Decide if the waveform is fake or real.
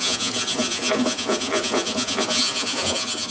fake